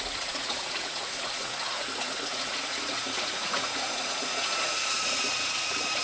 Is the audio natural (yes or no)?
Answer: no